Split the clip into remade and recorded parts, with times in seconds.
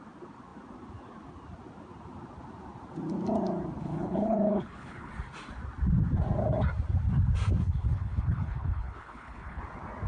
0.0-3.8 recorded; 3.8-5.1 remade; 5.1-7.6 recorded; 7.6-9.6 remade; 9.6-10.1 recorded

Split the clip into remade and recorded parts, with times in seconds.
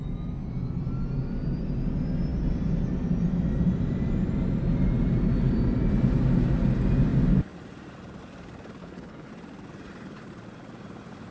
0.0-8.8 recorded; 8.8-9.3 remade; 9.3-11.3 recorded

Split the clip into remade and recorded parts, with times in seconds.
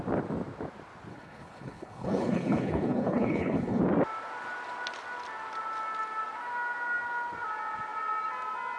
0.0-1.1 recorded; 1.1-3.8 remade; 3.8-8.8 recorded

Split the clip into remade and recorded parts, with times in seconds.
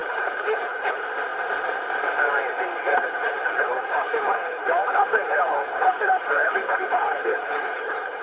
0.0-1.1 remade; 1.1-2.9 recorded; 2.9-8.2 remade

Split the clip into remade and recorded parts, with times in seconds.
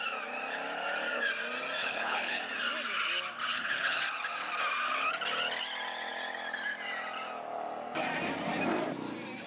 0.0-1.8 recorded; 1.8-2.4 remade; 2.4-3.5 recorded; 3.5-4.0 remade; 4.0-9.5 recorded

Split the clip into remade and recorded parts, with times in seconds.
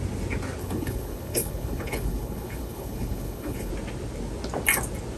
0.0-0.6 recorded; 0.6-3.7 remade; 3.7-5.2 recorded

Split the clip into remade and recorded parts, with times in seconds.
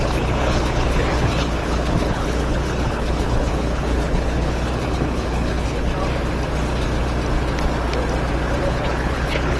0.0-5.9 remade; 5.9-8.6 recorded; 8.6-9.6 remade